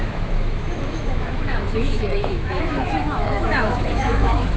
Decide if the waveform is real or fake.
fake